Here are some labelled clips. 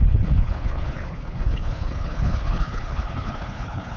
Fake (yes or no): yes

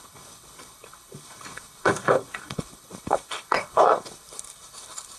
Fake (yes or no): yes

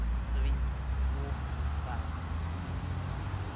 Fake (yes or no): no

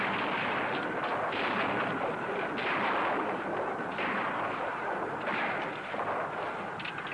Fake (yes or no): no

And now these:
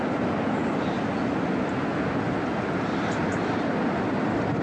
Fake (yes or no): no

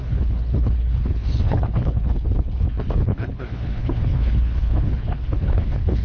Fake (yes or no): yes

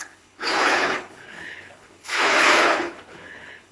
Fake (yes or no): yes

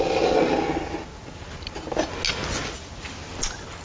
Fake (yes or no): no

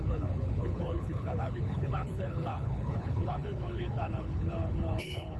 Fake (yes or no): yes